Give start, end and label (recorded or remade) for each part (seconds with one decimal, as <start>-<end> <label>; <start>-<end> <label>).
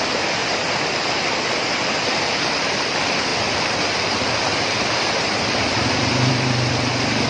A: 0.0-0.4 remade; 0.4-2.4 recorded; 2.4-7.3 remade